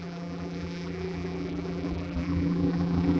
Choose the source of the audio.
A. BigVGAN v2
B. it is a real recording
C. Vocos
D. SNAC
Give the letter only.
A